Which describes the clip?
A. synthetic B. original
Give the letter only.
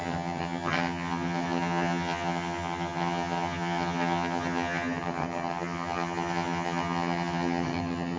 A